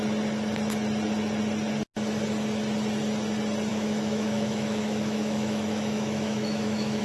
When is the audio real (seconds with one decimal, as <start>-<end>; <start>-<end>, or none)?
0.0-3.7